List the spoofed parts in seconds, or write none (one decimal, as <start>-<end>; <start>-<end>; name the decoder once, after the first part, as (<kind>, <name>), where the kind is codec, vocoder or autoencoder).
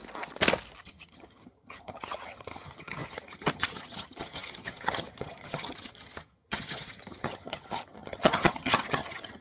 0.8-9.4 (vocoder, HiFi-GAN)